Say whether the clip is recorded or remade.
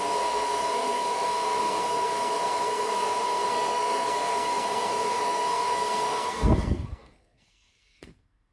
remade